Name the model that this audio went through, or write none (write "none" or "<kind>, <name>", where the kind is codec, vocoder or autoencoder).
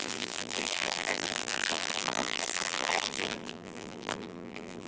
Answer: vocoder, BigVGAN v2